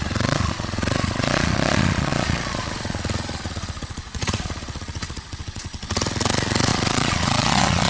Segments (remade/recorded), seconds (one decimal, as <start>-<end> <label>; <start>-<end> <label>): 0.0-7.9 remade